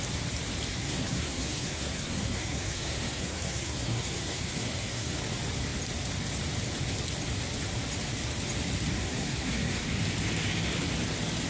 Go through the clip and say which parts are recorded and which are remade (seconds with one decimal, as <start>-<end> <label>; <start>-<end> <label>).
0.0-0.7 recorded; 0.7-5.2 remade; 5.2-9.0 recorded; 9.0-10.0 remade; 10.0-11.5 recorded